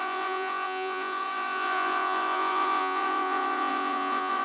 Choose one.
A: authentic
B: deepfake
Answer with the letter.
B